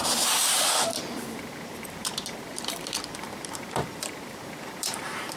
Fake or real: fake